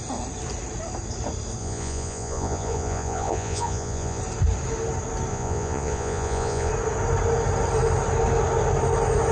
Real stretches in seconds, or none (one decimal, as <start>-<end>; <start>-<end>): 0.0-1.6; 4.2-5.3; 6.7-9.3

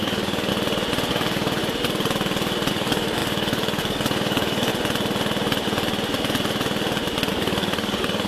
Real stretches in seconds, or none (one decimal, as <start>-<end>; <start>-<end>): 0.5-1.1; 1.6-2.7; 4.7-7.3

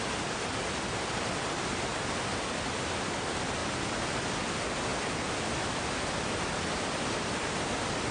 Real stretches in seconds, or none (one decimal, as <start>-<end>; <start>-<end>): 0.0-4.9; 7.5-8.1

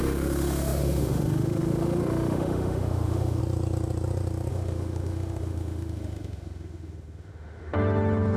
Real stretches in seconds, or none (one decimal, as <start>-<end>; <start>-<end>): 3.4-4.5

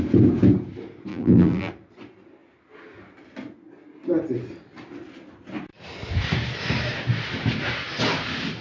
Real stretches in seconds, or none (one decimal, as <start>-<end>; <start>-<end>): 0.0-1.1; 1.7-8.6